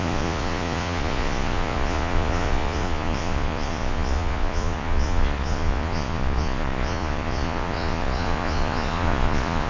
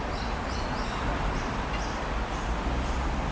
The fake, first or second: first